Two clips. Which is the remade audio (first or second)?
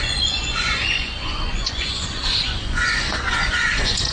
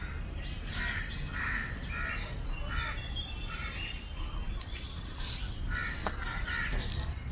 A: first